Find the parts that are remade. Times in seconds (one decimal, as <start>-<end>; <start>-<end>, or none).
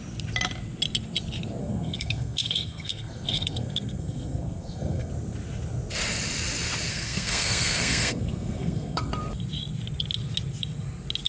1.6-5.1; 6.9-9.1